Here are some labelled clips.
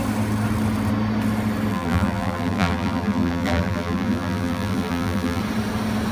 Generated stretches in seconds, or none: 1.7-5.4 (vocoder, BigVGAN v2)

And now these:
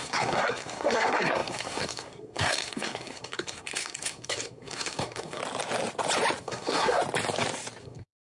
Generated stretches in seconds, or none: 0.0-5.4 (codec, SNAC); 6.4-7.0; 7.8-8.3

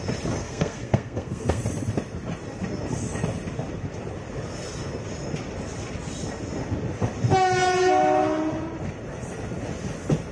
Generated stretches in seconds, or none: 0.4-1.6 (codec, SNAC)

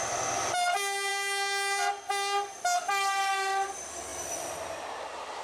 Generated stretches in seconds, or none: none

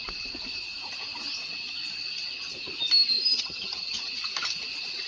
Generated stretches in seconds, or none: 3.3-4.1 (vocoder, HiFi-GAN)

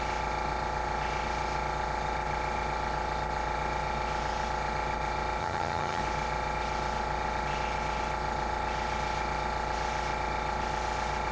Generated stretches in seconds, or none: 5.4-6.0 (vocoder, HiFi-GAN)